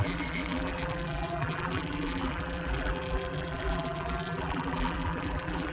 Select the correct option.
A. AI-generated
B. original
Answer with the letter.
A